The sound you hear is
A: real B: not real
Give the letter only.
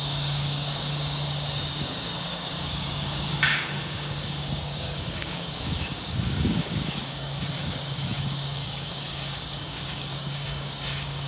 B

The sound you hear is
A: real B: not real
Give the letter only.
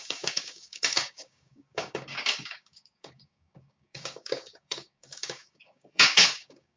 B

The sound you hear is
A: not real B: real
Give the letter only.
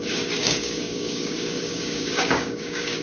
A